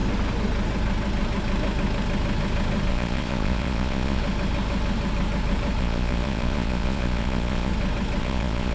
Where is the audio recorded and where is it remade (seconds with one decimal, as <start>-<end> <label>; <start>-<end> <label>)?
0.0-2.9 recorded; 2.9-4.2 remade; 4.2-5.8 recorded; 5.8-7.7 remade; 7.7-8.2 recorded; 8.2-8.7 remade